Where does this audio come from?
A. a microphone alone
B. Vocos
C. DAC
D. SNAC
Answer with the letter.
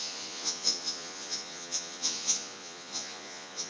B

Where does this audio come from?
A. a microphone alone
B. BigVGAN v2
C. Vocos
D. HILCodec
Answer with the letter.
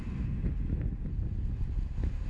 A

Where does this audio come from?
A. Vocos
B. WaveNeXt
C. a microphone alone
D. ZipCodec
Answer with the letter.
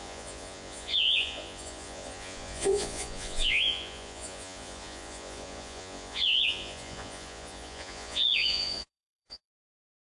A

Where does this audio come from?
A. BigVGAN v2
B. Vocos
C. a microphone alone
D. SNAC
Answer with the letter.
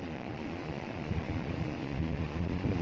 B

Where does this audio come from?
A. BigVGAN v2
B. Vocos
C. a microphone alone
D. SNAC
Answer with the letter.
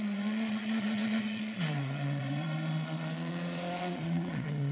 B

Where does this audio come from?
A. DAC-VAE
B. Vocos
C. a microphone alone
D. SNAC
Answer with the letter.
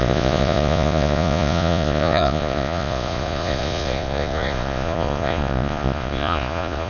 B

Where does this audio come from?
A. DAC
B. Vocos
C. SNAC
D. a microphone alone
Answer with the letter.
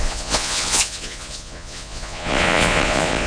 B